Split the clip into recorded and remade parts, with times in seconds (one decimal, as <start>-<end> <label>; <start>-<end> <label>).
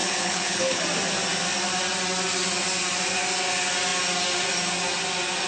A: 0.0-0.8 remade; 0.8-5.5 recorded